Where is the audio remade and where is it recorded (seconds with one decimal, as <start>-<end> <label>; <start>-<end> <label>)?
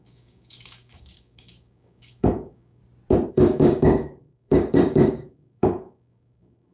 0.0-2.8 remade; 2.8-3.3 recorded; 3.3-6.7 remade